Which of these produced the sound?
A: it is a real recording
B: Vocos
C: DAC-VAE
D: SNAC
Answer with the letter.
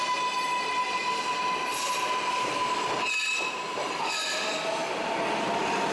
A